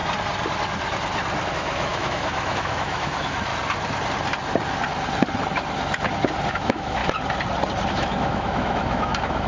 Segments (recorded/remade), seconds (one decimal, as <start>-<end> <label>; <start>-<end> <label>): 0.0-1.5 recorded; 1.5-3.5 remade; 3.5-6.5 recorded; 6.5-7.0 remade; 7.0-7.9 recorded; 7.9-9.5 remade